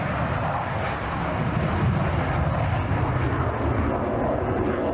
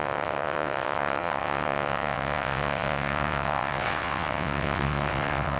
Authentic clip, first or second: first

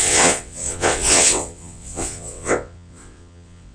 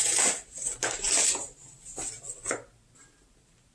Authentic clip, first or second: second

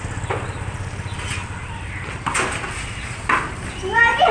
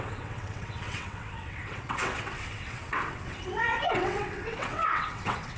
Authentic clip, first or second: first